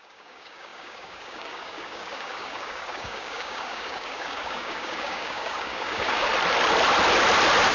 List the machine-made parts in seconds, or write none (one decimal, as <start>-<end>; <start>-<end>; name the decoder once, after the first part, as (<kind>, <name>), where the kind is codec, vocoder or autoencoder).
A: 0.0-6.3 (codec, DAC)